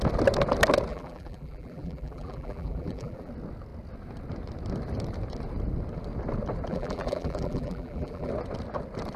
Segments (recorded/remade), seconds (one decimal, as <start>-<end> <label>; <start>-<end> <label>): 0.0-0.9 recorded; 0.9-3.3 remade; 3.3-6.7 recorded; 6.7-8.3 remade; 8.3-9.2 recorded